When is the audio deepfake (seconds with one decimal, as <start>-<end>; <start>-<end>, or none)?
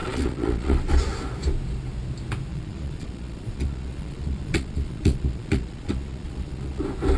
0.0-0.9; 2.5-6.8